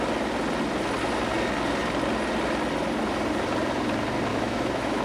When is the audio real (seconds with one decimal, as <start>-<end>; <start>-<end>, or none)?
0.0-4.3